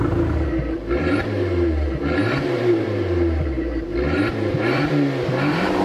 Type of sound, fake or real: fake